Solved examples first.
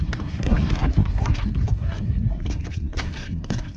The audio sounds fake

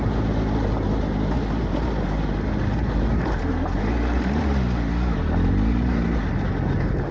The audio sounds real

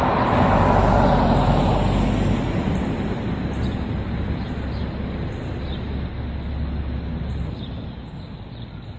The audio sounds real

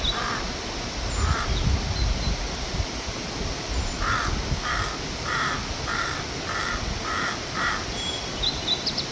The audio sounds real